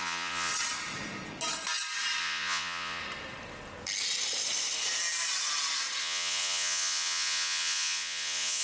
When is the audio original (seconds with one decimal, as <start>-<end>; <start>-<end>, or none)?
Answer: 0.5-2.2; 3.0-6.0